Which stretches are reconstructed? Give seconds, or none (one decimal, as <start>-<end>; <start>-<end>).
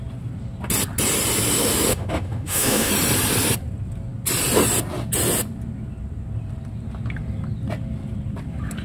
1.9-2.9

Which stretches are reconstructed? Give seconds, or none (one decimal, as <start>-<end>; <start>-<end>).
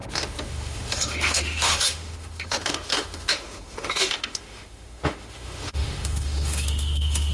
0.0-7.3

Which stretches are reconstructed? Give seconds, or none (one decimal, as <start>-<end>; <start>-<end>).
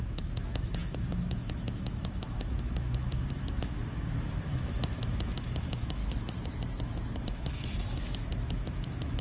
0.0-6.0; 7.2-9.2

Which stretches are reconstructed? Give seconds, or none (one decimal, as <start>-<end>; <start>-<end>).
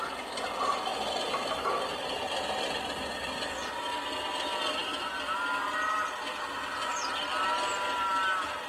none